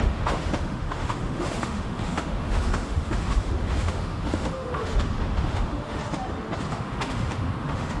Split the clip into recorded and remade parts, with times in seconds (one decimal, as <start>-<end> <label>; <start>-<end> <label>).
0.0-6.0 remade; 6.0-6.7 recorded; 6.7-8.0 remade